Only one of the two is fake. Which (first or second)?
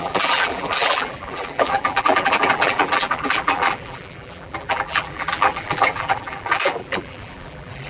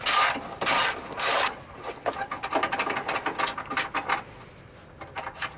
first